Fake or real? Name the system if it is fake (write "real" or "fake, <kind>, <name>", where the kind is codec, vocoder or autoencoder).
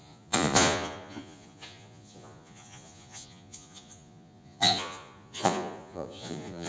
fake, vocoder, Vocos